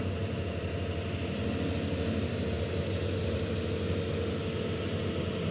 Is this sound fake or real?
real